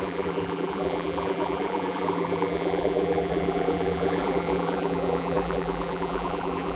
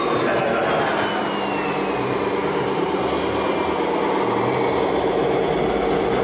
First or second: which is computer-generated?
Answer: first